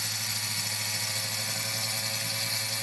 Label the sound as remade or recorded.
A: recorded